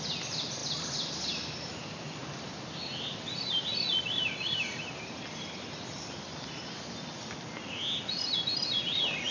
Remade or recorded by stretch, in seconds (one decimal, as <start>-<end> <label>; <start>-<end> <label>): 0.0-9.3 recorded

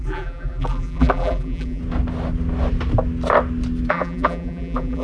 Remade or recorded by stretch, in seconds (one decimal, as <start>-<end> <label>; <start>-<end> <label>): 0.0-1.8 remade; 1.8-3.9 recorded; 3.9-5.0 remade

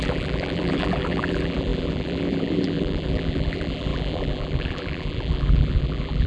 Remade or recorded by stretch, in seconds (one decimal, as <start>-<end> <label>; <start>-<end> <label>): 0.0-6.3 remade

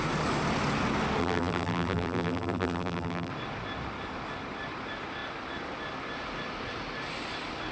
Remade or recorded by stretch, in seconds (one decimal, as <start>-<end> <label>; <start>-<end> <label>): 0.0-1.2 recorded; 1.2-3.3 remade; 3.3-7.7 recorded

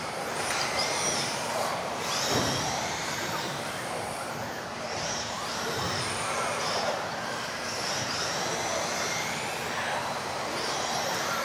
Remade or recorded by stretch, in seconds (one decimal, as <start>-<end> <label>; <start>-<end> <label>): 0.0-8.5 remade; 8.5-10.2 recorded; 10.2-11.4 remade

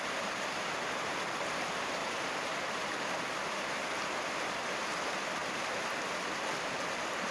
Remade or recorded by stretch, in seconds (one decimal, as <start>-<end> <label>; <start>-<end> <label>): 0.0-2.0 recorded; 2.0-3.1 remade; 3.1-7.3 recorded